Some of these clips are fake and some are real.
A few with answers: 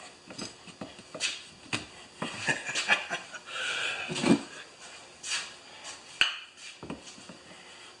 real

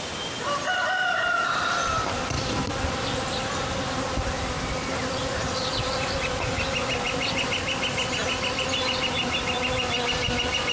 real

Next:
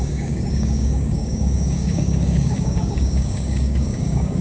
fake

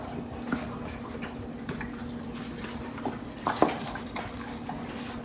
real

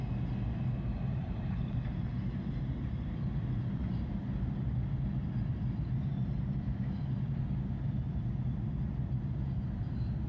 real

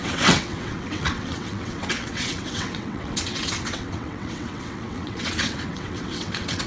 fake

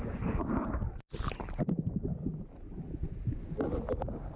real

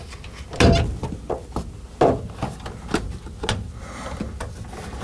real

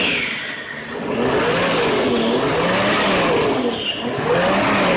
real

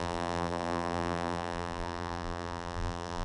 fake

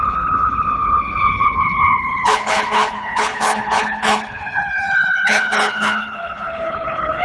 fake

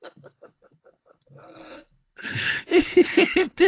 fake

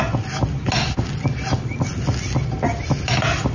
real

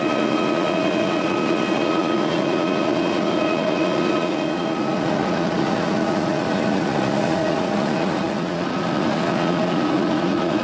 fake